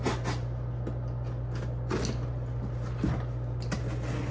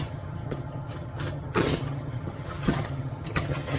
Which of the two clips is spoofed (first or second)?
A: second